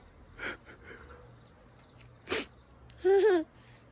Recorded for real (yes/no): yes